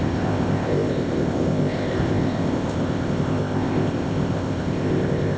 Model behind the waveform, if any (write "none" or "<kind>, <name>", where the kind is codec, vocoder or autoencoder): codec, ZipCodec